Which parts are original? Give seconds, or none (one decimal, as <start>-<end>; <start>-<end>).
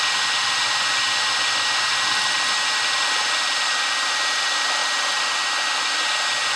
0.0-1.9; 3.7-4.8; 6.0-6.6